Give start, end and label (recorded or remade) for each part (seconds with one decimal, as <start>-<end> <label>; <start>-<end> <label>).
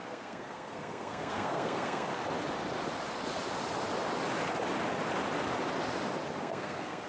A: 0.0-2.1 remade; 2.1-6.4 recorded; 6.4-7.1 remade